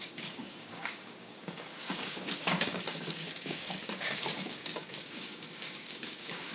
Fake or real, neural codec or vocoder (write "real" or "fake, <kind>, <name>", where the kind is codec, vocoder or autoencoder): fake, codec, DAC